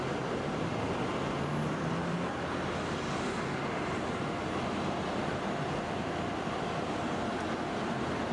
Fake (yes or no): no